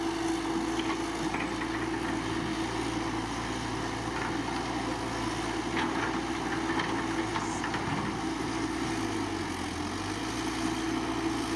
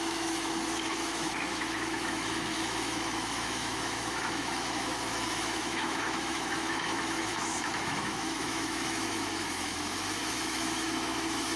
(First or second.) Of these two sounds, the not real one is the second